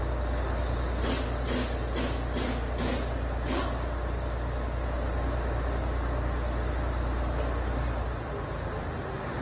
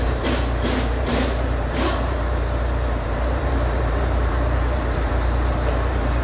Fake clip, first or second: second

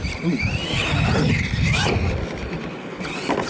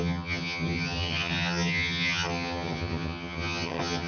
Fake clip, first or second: second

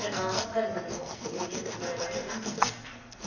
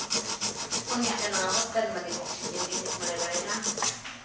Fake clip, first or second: first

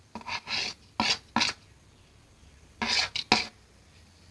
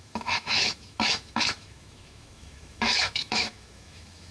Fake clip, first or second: second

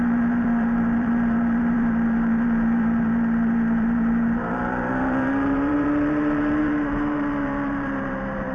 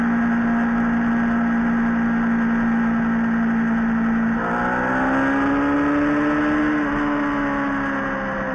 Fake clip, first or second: first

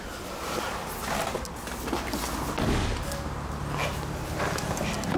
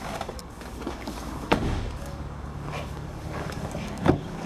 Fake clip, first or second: second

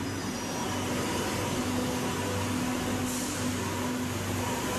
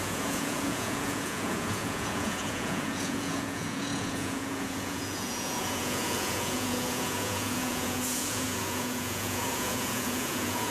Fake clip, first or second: second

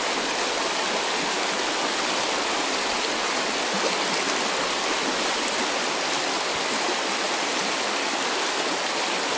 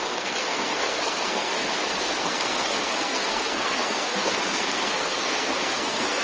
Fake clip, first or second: second